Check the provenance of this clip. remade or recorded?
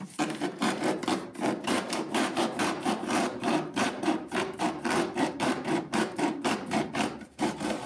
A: remade